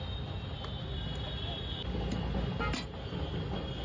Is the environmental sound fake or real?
real